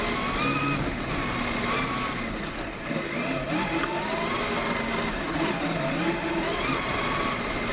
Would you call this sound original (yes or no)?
yes